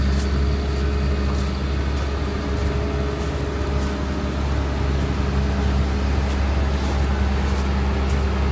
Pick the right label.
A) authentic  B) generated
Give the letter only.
A